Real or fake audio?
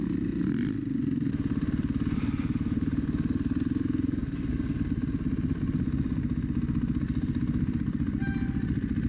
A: real